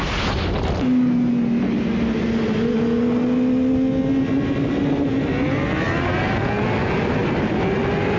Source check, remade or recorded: recorded